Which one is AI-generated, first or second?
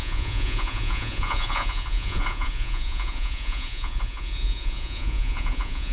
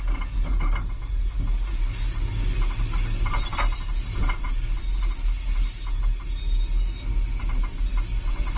first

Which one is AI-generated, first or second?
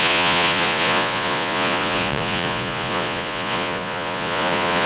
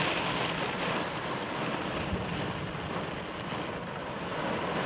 first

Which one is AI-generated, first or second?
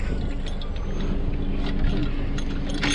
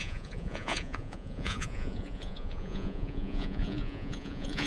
second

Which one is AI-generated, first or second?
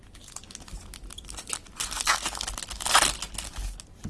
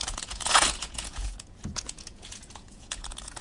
second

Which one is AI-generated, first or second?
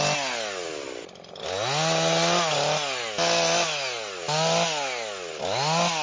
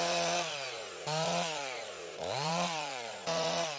second